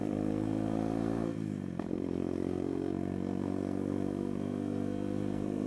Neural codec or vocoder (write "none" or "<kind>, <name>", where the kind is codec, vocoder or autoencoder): codec, SNAC